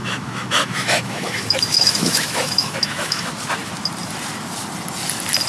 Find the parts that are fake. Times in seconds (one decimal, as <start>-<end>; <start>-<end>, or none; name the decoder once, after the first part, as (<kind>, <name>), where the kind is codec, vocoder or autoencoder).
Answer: 0.0-3.3 (autoencoder, DAC-VAE)